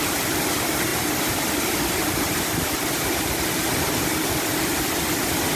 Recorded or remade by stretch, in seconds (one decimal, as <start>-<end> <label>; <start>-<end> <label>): 0.0-5.6 recorded